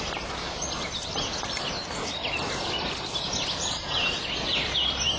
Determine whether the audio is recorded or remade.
recorded